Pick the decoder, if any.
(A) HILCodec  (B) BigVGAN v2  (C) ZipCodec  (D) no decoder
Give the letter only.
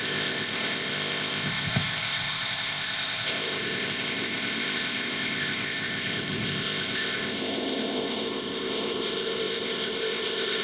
C